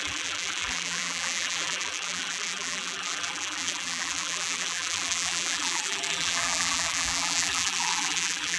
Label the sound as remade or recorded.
remade